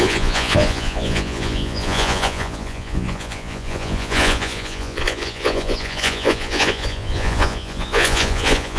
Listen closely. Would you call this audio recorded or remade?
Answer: remade